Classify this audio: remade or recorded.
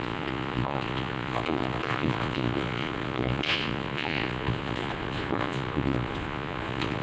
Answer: remade